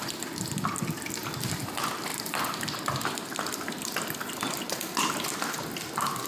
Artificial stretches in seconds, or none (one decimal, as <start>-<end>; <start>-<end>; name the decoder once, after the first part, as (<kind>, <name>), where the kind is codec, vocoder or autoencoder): none